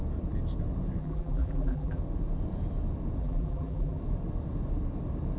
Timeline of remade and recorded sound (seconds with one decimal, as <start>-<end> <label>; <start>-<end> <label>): 0.0-1.0 recorded; 1.0-2.0 remade; 2.0-3.2 recorded; 3.2-4.0 remade; 4.0-5.4 recorded